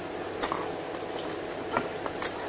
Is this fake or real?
real